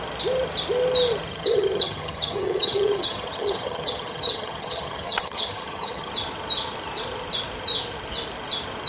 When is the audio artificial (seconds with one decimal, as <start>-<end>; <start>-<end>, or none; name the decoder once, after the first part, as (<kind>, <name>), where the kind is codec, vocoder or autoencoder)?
1.3-6.1 (vocoder, HiFi-GAN)